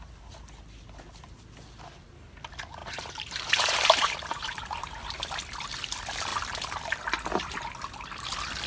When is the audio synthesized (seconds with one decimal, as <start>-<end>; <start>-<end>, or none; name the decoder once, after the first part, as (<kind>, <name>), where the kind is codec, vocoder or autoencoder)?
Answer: 2.8-5.2 (vocoder, BigVGAN v2)